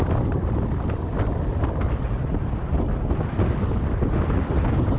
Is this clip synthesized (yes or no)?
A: no